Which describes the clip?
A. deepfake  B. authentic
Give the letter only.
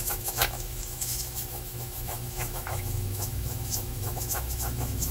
A